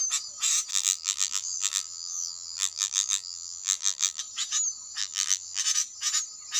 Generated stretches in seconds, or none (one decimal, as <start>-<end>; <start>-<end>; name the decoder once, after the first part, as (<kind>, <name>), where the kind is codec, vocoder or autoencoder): 0.7-4.2 (vocoder, BigVGAN v2); 5.0-5.6

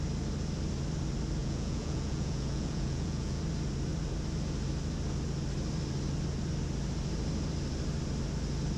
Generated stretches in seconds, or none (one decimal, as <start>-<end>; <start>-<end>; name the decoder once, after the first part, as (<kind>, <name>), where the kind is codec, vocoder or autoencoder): 1.4-3.4 (vocoder, Vocos)

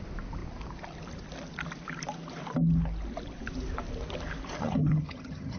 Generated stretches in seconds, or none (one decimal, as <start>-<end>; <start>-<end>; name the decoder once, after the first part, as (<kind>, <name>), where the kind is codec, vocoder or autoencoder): 4.6-5.6 (vocoder, HiFi-GAN)

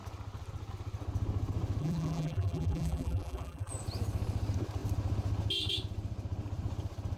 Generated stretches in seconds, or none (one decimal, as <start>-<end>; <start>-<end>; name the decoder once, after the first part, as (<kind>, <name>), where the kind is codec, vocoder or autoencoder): 1.8-3.7 (vocoder, BigVGAN v2)

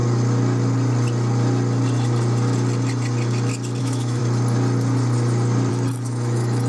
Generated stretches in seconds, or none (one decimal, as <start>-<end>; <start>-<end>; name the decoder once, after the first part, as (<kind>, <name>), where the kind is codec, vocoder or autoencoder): 3.8-4.2 (autoencoder, DAC-VAE); 5.7-6.7

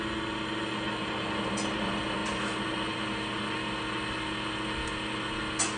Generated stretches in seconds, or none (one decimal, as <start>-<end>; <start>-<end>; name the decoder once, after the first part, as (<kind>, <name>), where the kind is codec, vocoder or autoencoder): none

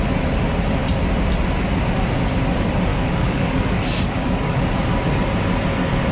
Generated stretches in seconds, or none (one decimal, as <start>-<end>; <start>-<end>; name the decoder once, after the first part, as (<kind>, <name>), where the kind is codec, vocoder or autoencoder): 2.9-4.9 (codec, DAC)